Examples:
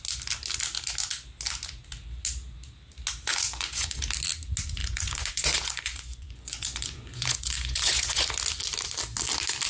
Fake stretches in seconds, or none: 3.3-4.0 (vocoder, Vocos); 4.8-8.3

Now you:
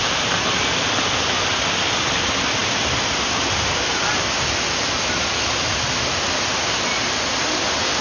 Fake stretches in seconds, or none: none

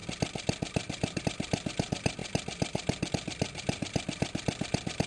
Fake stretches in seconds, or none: none